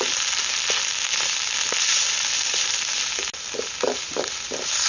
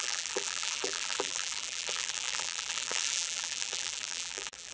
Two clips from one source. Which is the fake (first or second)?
second